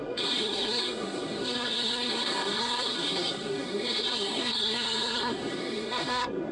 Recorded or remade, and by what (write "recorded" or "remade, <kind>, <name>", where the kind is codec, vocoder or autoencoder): remade, codec, SNAC